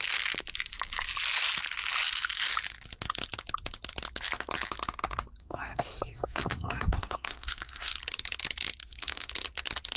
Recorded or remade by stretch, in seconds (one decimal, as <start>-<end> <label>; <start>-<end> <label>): 0.0-5.4 recorded; 5.4-8.0 remade; 8.0-8.8 recorded; 8.8-9.3 remade; 9.3-10.0 recorded